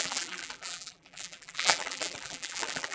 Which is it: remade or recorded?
remade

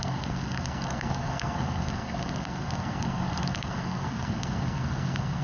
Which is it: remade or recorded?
remade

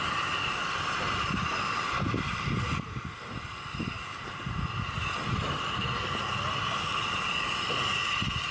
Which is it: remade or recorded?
recorded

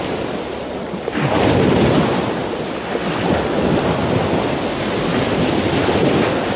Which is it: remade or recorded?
recorded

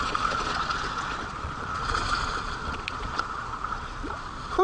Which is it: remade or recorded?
remade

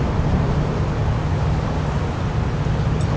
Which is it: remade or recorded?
recorded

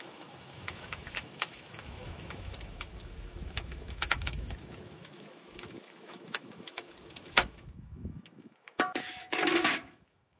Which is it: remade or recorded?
remade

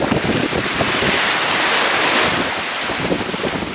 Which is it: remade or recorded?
recorded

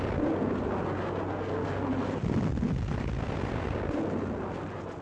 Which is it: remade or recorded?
recorded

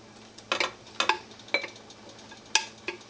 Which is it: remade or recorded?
recorded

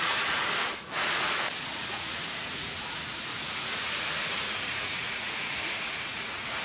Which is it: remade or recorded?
remade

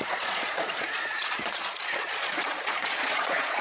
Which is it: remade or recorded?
remade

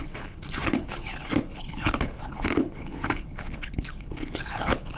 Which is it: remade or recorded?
remade